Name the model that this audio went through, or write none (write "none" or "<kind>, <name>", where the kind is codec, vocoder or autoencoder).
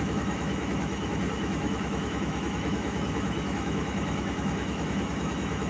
autoencoder, DAC-VAE